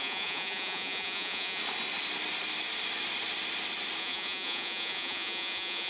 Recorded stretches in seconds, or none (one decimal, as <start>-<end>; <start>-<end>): 1.6-4.0